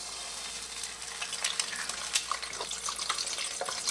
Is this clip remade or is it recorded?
recorded